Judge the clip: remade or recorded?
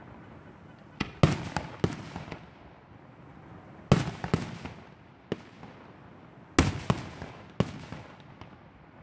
recorded